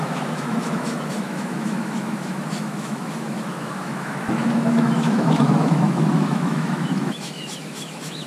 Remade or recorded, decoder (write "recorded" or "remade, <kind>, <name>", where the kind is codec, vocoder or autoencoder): remade, autoencoder, DAC-VAE